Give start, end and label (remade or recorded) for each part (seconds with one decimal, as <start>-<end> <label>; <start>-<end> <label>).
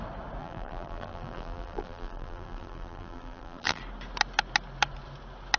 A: 0.0-0.4 recorded; 0.4-3.8 remade; 3.8-5.6 recorded